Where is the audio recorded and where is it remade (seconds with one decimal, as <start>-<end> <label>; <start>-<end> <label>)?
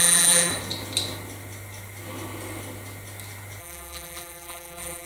0.0-0.5 remade; 0.5-3.6 recorded; 3.6-5.1 remade